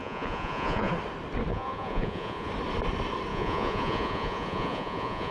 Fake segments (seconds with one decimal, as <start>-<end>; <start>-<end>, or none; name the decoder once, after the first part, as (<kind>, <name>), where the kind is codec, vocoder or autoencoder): 0.0-0.9 (vocoder, Vocos); 1.5-2.5; 3.3-5.3

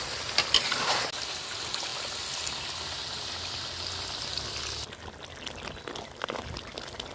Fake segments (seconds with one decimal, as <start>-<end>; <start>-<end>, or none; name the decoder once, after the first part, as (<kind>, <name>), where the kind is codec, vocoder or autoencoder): none

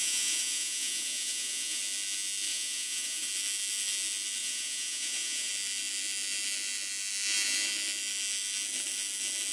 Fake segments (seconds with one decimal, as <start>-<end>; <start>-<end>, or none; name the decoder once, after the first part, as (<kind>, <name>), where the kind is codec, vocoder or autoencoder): 0.0-1.8 (vocoder, Vocos); 2.5-3.3; 4.4-5.5

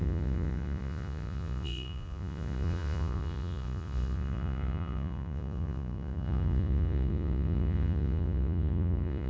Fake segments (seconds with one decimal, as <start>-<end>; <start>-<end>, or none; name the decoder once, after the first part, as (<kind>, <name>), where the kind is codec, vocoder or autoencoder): 0.0-9.3 (vocoder, Vocos)

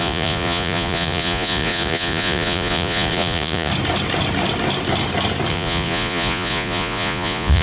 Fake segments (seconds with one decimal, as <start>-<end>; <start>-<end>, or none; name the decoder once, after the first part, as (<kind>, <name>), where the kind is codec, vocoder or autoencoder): 0.0-3.7 (vocoder, Vocos); 5.5-7.6

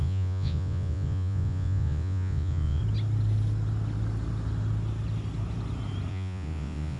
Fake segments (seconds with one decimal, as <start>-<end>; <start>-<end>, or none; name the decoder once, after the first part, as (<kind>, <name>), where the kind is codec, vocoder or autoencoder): 0.0-2.8 (vocoder, Vocos); 6.1-7.0

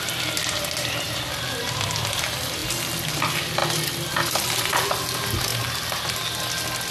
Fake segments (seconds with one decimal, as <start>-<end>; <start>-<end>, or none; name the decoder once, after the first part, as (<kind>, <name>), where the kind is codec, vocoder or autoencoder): none

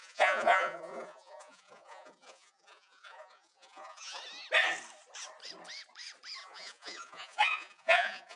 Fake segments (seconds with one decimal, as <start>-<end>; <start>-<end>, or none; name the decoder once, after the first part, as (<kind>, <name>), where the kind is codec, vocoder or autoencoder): 0.0-4.2 (vocoder, Vocos); 6.4-8.4